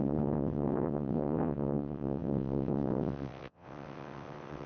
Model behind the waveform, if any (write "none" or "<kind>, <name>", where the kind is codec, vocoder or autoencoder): vocoder, WaveNeXt